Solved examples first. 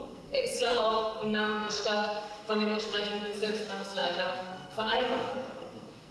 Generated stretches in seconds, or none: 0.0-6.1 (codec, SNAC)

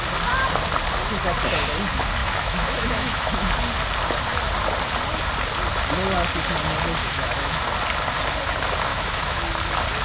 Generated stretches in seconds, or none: 2.2-3.5 (autoencoder, DAC-VAE); 7.0-7.6; 8.9-9.4

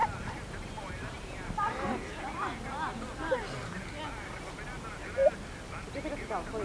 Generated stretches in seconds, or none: 0.0-4.0 (vocoder, BigVGAN v2)

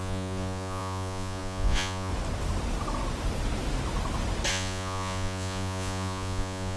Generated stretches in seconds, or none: 0.0-2.1 (vocoder, Vocos); 4.5-6.8

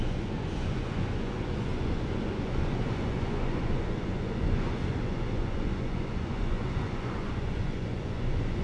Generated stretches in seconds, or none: 0.0-8.6 (vocoder, Vocos)

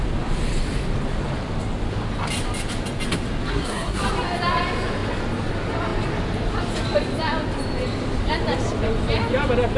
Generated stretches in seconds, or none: 3.5-4.0 (codec, SNAC)

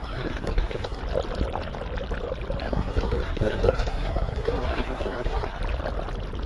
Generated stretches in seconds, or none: 0.0-1.0 (codec, SNAC); 2.6-5.6

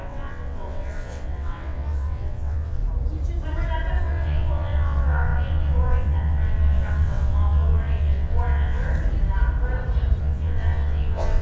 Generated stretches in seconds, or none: 0.0-2.8 (vocoder, WaveNeXt); 4.0-8.8; 10.2-11.4